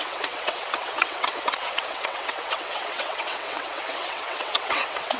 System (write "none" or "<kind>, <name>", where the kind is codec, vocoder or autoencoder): vocoder, WaveNeXt